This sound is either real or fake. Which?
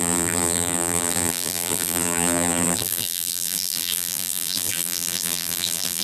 fake